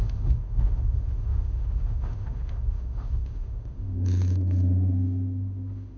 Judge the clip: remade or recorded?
remade